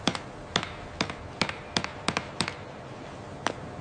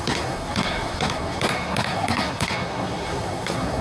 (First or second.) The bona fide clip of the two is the first